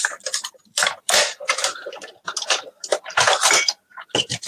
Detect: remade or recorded remade